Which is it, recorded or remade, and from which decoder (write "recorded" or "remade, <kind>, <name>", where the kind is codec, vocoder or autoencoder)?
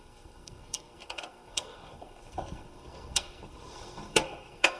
remade, codec, SNAC